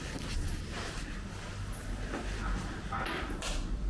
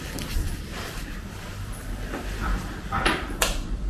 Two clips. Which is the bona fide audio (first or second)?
first